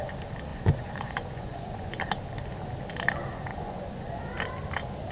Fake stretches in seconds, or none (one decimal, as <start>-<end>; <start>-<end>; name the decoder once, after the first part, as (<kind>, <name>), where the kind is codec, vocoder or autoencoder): 0.5-2.0 (vocoder, Vocos); 3.5-4.2